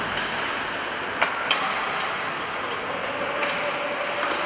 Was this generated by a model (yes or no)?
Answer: no